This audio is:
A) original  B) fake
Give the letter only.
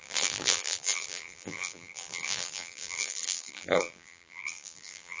B